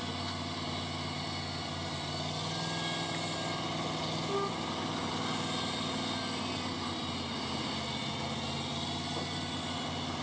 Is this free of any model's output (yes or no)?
yes